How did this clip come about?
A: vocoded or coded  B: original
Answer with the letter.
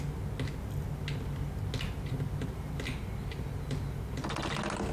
B